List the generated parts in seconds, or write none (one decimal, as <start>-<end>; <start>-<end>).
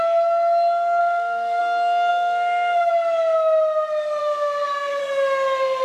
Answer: 1.0-1.6; 2.1-2.9; 4.2-5.0